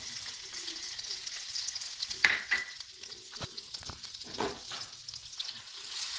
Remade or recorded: remade